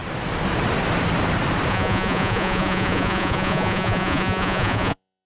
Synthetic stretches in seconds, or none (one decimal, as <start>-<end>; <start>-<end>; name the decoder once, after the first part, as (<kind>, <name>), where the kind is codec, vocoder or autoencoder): 1.7-5.3 (vocoder, Vocos)